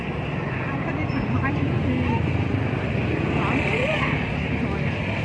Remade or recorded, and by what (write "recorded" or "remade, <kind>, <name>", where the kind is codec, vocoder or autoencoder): recorded